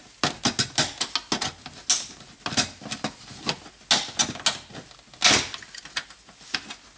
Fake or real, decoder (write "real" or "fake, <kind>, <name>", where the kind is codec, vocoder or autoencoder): real